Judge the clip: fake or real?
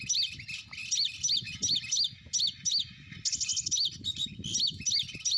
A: real